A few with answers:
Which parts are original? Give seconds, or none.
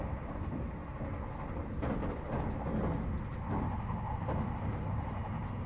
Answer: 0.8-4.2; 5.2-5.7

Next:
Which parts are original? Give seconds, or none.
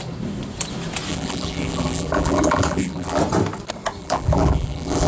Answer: 0.0-1.1; 3.2-4.0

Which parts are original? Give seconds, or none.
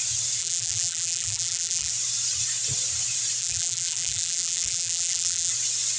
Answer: 0.0-0.4; 1.9-3.4; 5.5-6.0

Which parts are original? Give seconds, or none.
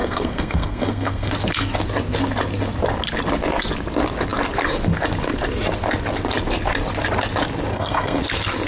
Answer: 1.3-7.7; 8.2-8.7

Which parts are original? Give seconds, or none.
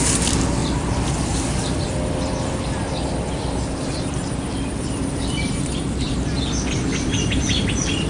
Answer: 0.0-0.6; 5.5-6.9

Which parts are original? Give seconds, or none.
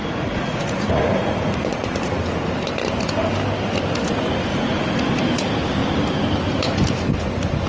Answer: 2.1-4.5; 5.2-7.7